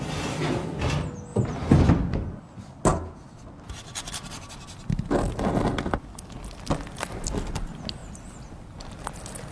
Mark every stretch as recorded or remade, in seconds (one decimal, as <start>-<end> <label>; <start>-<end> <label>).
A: 0.0-8.0 recorded; 8.0-8.9 remade; 8.9-9.5 recorded